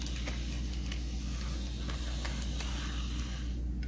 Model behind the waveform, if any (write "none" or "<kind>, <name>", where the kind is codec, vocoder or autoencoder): none